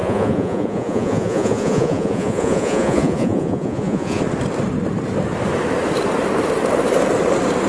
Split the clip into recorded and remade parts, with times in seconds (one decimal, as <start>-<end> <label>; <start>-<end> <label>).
0.0-4.2 remade; 4.2-7.7 recorded